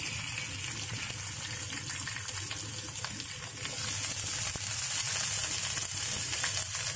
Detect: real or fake real